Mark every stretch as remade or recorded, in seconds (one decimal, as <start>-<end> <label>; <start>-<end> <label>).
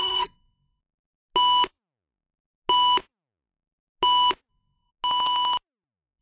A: 0.0-0.8 remade; 0.8-4.5 recorded; 4.5-4.9 remade; 4.9-6.2 recorded